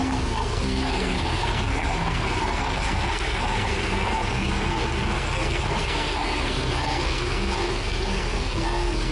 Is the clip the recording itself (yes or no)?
no